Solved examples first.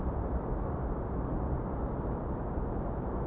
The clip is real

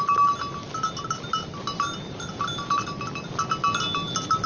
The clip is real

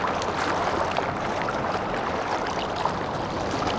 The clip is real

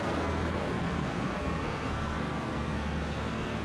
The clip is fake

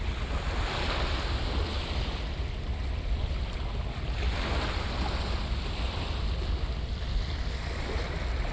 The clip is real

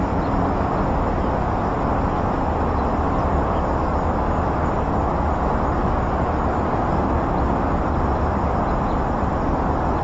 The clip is real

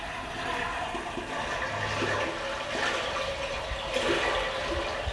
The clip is real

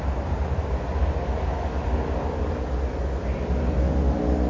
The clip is real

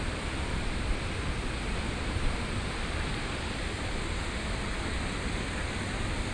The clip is real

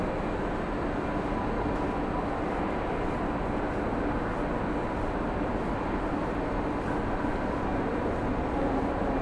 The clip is real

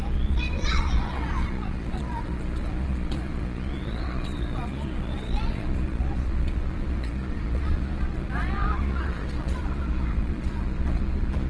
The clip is fake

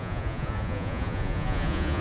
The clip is fake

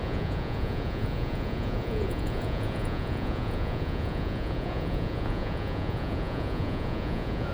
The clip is fake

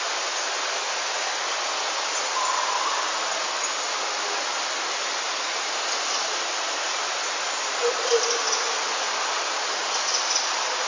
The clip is real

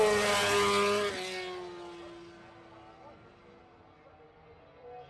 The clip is real